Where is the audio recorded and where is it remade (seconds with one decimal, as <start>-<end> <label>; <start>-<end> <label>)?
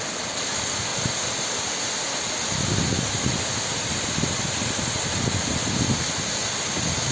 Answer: 0.0-7.1 recorded